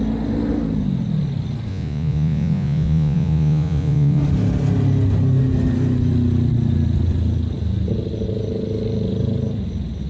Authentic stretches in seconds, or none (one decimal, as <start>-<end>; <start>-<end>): 0.0-1.7; 4.2-10.1